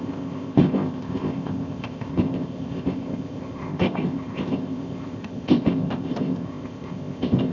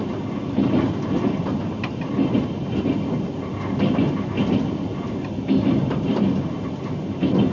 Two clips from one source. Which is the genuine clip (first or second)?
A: second